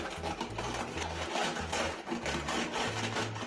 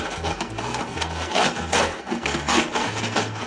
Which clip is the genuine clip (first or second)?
first